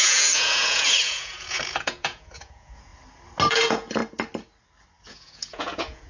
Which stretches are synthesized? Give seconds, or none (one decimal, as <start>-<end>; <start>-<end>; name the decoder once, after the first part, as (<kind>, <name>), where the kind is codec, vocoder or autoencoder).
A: 0.0-2.9 (vocoder, Vocos); 3.5-4.0; 5.0-6.1